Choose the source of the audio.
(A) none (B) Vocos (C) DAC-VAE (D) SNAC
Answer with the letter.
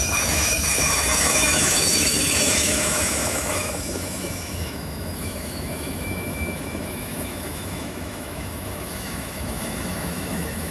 C